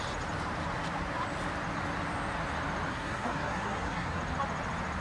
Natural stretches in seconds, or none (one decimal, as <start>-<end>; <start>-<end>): 0.0-2.9; 4.2-5.0